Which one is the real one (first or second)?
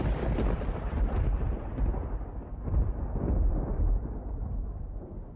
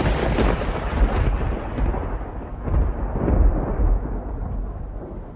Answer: second